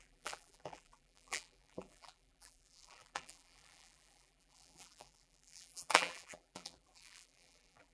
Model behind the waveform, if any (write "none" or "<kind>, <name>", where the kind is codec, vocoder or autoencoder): vocoder, BigVGAN v2